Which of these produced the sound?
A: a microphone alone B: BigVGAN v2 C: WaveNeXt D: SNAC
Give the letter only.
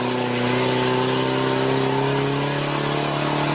A